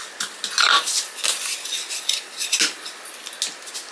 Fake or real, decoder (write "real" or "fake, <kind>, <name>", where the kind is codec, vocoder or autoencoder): real